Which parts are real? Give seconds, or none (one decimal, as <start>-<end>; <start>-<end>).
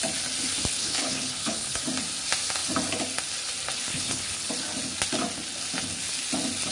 0.0-0.8; 1.8-3.9; 4.5-6.7